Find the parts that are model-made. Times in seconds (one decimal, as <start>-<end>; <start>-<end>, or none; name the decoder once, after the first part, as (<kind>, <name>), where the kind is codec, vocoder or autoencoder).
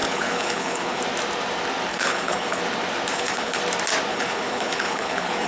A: 0.0-1.0 (codec, HILCodec); 1.9-2.6; 3.1-3.6; 4.1-5.5